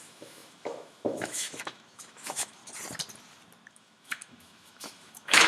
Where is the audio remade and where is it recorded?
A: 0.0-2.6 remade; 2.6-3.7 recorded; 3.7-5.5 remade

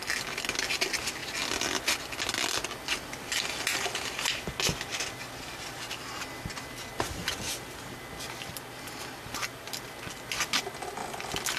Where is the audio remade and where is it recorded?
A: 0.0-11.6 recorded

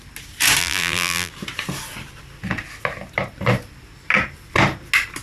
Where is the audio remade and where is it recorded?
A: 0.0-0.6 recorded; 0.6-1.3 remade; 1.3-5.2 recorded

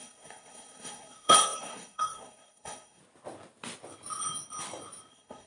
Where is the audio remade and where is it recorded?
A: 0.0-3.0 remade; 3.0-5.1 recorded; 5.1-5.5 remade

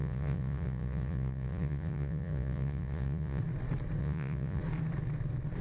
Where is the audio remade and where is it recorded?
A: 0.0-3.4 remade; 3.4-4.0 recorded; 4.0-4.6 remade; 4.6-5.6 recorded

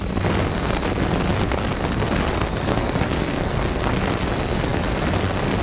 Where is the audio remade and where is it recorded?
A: 0.0-2.7 recorded; 2.7-3.9 remade; 3.9-5.6 recorded

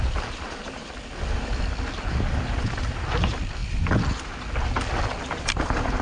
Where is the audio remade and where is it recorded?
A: 0.0-1.6 recorded; 1.6-3.6 remade; 3.6-5.6 recorded; 5.6-6.0 remade